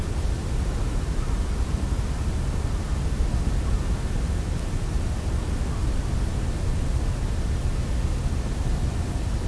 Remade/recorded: recorded